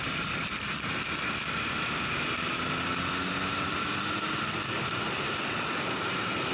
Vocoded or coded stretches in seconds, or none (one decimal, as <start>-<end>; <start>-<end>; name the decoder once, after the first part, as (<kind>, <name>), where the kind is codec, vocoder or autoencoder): none